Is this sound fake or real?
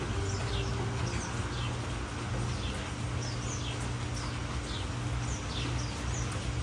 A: real